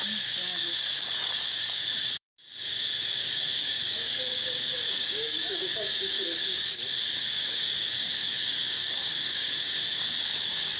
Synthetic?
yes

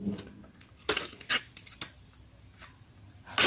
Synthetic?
no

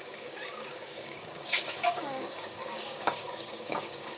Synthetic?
yes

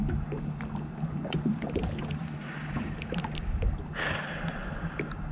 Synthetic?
no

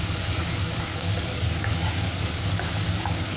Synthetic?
yes